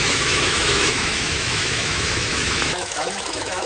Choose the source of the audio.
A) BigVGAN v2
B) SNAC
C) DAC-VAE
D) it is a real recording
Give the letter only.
C